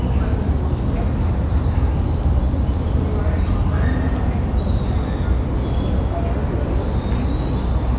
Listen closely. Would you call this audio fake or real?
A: real